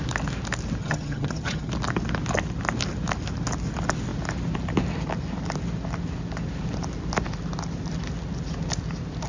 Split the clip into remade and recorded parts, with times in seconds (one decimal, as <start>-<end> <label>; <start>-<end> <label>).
0.0-0.8 recorded; 0.8-1.7 remade; 1.7-9.3 recorded